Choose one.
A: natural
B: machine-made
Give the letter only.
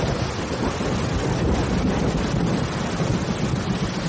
A